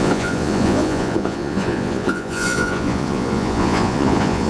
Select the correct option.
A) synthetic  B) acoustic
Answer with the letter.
A